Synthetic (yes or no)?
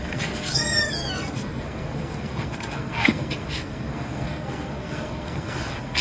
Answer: yes